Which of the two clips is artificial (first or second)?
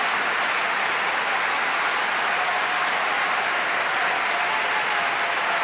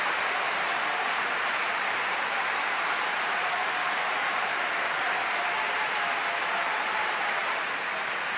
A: second